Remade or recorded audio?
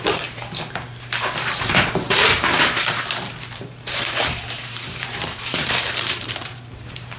remade